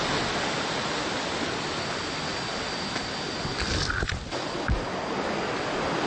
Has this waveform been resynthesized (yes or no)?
no